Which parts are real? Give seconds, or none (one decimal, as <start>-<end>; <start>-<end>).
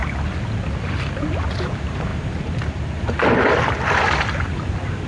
0.0-5.1